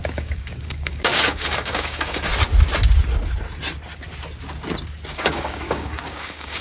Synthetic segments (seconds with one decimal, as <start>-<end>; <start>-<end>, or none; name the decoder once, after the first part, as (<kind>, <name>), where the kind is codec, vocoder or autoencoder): 0.0-2.3 (codec, DAC); 5.1-6.6